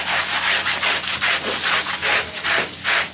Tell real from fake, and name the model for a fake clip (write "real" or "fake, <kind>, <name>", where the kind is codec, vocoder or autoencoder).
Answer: fake, vocoder, BigVGAN v2